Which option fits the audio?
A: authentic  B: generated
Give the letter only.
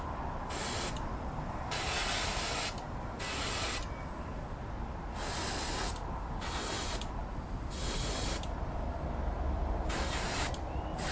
A